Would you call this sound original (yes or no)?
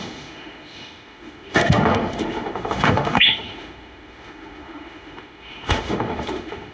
no